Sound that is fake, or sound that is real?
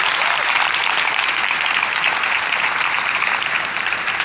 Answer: fake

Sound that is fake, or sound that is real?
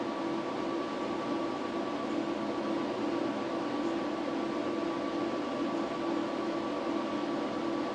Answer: real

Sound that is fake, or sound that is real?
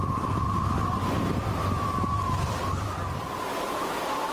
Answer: real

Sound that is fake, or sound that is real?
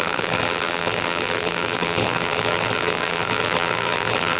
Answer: fake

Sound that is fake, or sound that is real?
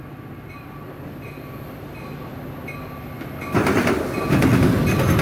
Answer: real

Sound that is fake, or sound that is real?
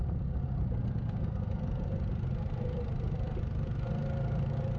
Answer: fake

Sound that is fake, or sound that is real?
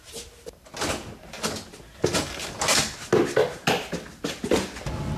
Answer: real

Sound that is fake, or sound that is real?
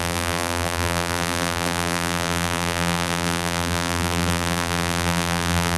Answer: fake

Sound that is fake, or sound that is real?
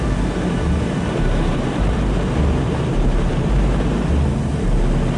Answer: fake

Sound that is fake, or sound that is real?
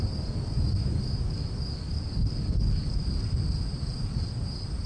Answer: real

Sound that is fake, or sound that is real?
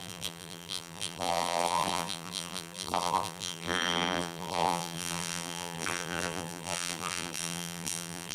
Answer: fake